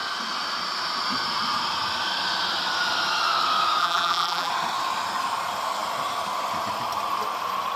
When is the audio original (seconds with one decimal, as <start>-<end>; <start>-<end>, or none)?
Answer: 0.0-3.8; 4.5-7.8